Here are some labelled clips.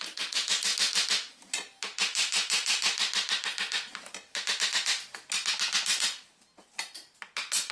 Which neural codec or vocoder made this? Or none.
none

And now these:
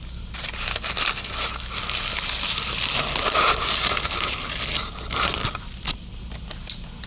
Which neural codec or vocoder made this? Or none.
none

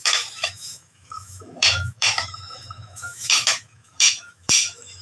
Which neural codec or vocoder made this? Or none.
autoencoder, DAC-VAE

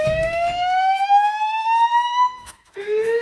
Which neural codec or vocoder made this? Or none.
autoencoder, DAC-VAE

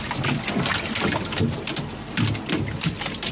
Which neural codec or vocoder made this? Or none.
none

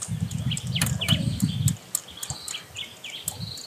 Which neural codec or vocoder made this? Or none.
none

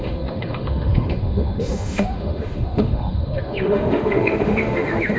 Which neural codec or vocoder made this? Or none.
autoencoder, DAC-VAE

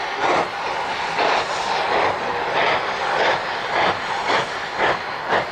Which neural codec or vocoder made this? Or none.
none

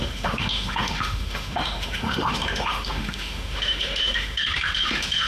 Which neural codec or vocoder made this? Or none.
autoencoder, DAC-VAE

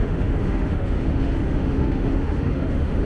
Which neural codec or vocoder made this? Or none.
autoencoder, DAC-VAE